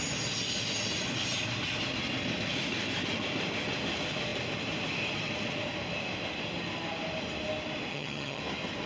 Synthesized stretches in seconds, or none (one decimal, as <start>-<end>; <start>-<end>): 7.9-8.4